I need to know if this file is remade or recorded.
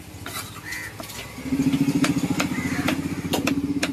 recorded